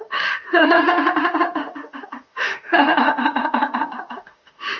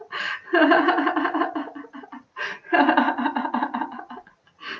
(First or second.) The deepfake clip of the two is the first